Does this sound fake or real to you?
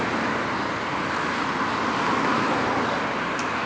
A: real